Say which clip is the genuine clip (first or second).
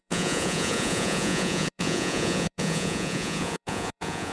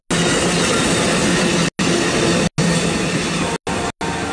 second